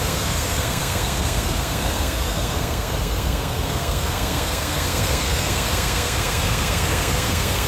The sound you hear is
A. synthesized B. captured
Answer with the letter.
A